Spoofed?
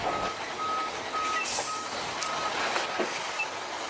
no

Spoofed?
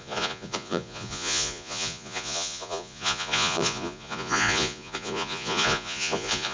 yes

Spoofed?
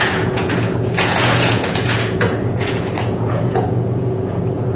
yes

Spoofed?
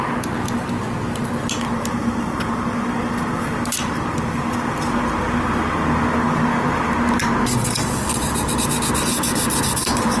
no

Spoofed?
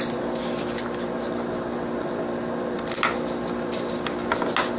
no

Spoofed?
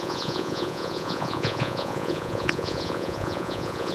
yes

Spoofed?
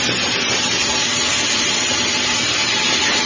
no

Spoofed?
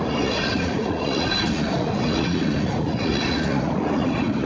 yes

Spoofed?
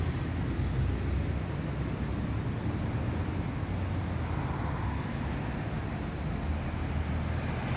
no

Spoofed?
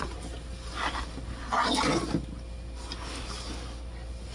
no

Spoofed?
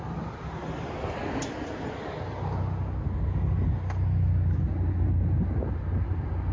no